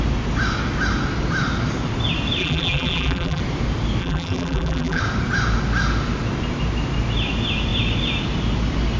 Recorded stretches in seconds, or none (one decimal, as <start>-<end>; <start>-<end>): 0.0-2.4; 3.4-4.0; 5.0-9.0